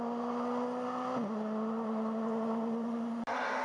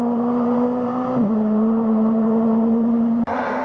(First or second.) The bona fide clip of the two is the first